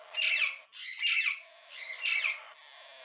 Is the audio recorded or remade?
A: recorded